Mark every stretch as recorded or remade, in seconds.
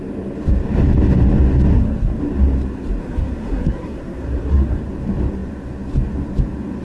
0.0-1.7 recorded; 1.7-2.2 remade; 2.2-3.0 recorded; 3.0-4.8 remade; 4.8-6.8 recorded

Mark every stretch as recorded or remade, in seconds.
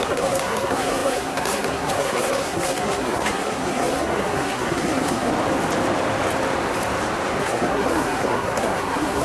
0.0-5.3 remade; 5.3-7.4 recorded; 7.4-9.2 remade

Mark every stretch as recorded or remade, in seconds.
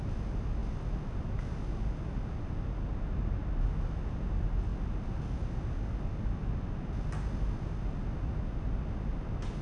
0.0-9.6 recorded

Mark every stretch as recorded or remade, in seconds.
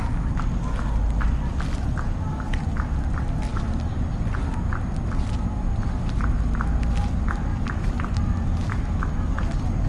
0.0-9.9 recorded